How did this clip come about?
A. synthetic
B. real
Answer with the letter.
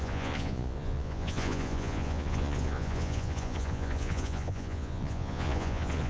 A